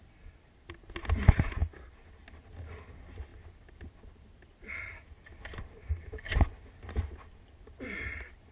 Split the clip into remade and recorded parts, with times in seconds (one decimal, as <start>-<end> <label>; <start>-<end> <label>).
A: 0.0-8.5 recorded